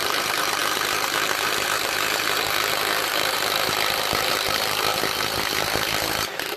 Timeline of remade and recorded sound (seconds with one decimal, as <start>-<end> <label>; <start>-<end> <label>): 0.0-6.6 remade